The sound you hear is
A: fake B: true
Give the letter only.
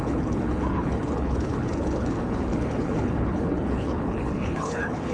A